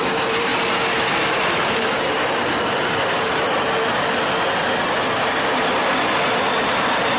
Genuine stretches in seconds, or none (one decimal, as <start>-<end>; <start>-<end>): 0.5-1.9; 2.5-6.3